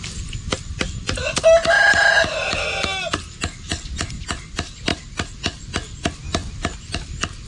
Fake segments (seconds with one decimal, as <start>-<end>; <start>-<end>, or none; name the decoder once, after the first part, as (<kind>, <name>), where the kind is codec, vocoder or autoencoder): 4.9-5.4 (vocoder, BigVGAN v2)